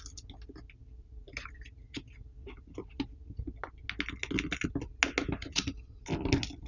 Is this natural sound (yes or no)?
yes